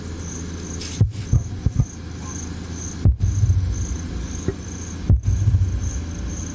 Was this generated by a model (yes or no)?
no